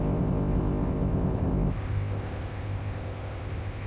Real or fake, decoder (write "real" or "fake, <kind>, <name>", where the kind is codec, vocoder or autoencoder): fake, codec, ZipCodec